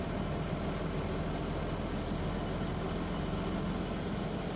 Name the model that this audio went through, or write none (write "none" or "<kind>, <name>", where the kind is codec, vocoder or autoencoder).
none